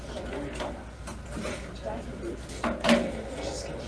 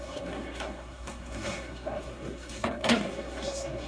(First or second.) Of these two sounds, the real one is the first